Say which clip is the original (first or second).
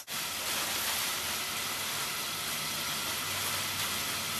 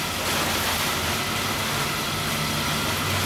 second